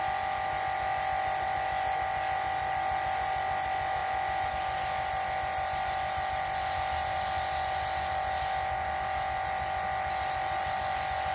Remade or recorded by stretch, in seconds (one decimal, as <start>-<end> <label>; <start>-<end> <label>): 0.0-11.3 recorded